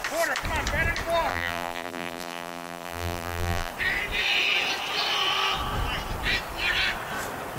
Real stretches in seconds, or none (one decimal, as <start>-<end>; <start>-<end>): 0.0-1.3; 3.7-7.6